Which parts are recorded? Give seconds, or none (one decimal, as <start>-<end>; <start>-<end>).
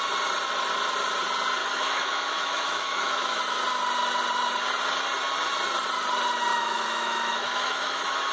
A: 0.0-1.6; 3.4-6.5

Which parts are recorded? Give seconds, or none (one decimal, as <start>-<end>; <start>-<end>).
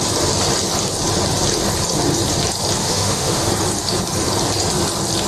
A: 0.0-2.8; 3.5-5.3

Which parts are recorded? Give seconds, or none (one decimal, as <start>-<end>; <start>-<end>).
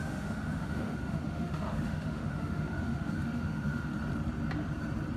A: 3.9-5.2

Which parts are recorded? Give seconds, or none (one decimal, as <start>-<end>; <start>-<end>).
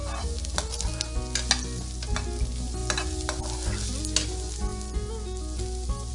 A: 0.0-6.1